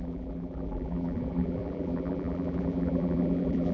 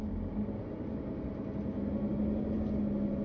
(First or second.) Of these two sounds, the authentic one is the second